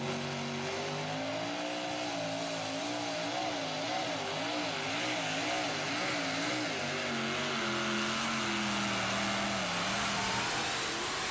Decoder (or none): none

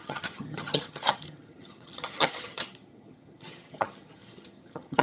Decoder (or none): vocoder, HiFi-GAN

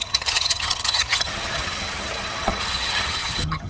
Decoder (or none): vocoder, HiFi-GAN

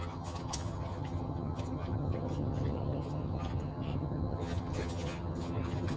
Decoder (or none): vocoder, HiFi-GAN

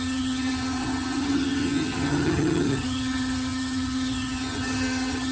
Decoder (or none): vocoder, HiFi-GAN